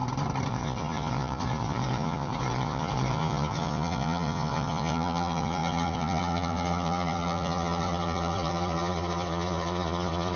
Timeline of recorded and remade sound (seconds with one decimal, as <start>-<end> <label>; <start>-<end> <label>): 0.0-0.5 recorded; 0.5-10.4 remade